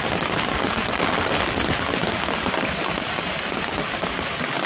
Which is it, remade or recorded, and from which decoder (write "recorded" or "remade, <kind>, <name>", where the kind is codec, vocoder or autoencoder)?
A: recorded